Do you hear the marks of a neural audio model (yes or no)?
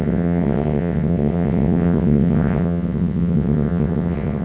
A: yes